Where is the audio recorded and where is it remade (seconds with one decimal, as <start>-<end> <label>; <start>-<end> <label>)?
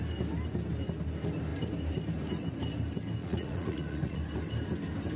0.0-3.2 recorded; 3.2-4.2 remade; 4.2-5.2 recorded